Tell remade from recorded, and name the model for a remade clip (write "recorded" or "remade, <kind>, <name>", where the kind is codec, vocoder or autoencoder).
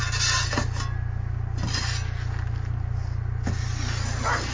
recorded